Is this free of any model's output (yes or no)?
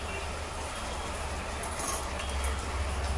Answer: yes